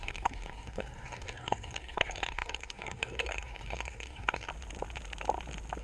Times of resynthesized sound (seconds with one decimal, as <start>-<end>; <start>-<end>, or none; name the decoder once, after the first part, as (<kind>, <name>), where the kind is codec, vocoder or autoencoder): 0.0-4.5 (codec, SNAC)